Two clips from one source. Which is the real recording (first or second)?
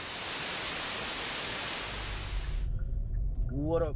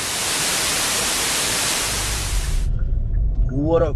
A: first